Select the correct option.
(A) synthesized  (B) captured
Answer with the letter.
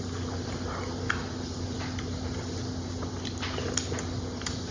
B